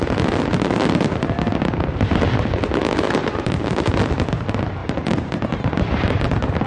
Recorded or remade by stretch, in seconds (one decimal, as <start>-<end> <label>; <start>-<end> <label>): 0.0-3.2 recorded; 3.2-4.0 remade; 4.0-4.8 recorded; 4.8-6.7 remade